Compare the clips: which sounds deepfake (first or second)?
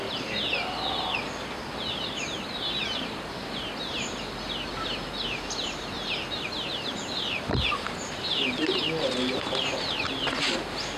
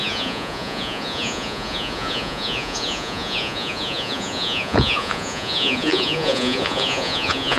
second